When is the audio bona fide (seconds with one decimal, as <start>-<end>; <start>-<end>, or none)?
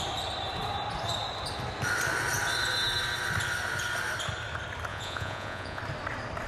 0.0-4.9; 5.8-6.5